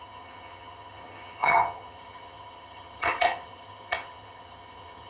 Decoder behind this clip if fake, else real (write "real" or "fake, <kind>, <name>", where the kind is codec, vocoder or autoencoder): fake, vocoder, HiFi-GAN